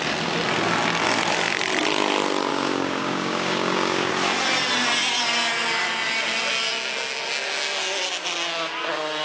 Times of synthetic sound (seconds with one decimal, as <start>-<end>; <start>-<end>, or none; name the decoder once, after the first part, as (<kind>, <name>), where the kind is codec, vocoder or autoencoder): 2.5-4.1 (codec, DAC)